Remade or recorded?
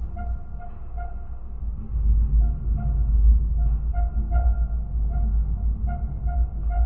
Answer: recorded